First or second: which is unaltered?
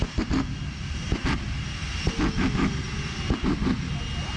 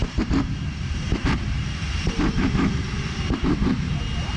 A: first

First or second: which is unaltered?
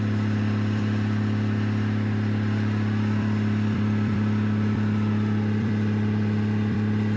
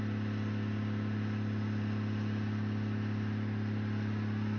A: second